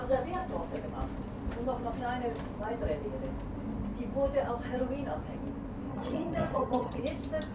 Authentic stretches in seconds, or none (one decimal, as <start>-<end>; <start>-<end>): 0.0-5.9; 7.0-7.5